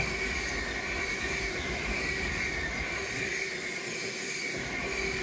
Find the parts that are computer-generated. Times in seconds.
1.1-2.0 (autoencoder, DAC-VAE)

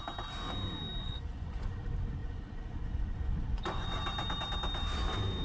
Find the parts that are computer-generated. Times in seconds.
1.0-1.7 (vocoder, Vocos); 2.2-4.0

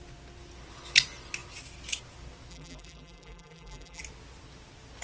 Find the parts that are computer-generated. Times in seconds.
2.5-4.0 (vocoder, BigVGAN v2)

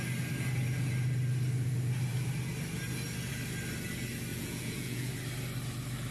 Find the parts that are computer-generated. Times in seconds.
4.3-5.1 (vocoder, Vocos)